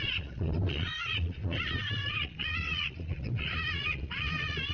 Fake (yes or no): yes